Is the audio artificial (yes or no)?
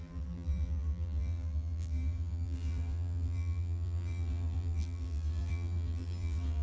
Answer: yes